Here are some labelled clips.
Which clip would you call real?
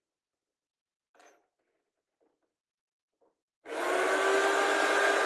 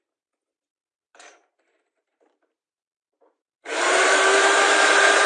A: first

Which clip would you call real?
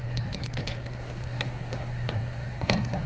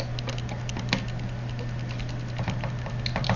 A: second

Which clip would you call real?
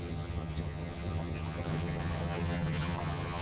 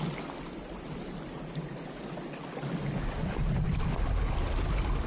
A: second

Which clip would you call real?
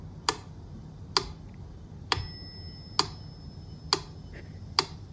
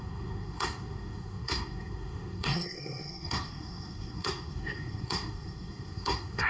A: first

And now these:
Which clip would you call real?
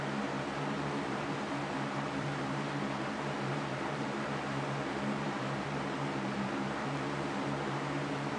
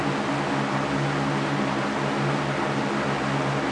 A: second